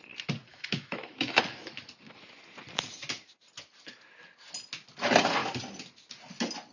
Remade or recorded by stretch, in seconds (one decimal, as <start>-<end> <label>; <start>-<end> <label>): 0.0-0.5 recorded; 0.5-1.4 remade; 1.4-6.7 recorded